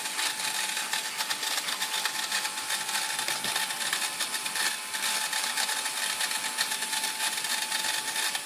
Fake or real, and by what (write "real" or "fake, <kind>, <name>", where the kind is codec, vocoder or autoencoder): real